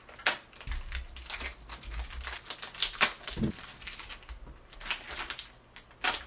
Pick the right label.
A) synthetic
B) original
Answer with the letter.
B